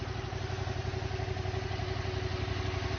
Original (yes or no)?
yes